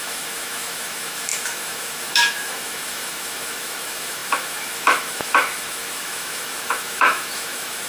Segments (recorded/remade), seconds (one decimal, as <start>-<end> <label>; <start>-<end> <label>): 0.0-7.9 remade